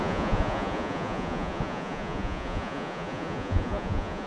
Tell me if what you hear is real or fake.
fake